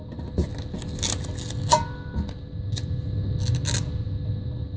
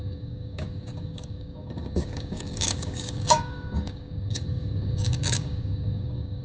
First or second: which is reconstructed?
second